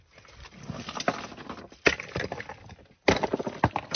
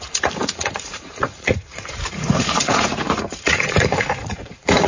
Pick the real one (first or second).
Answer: first